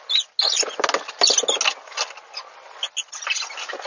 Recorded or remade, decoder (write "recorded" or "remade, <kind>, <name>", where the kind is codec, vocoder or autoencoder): recorded